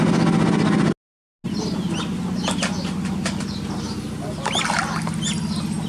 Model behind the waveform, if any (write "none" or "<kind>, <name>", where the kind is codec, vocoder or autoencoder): none